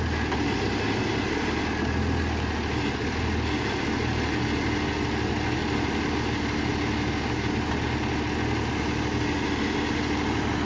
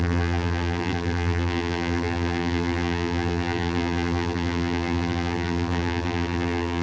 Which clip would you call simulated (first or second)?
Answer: second